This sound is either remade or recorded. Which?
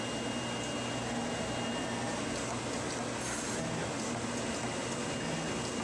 recorded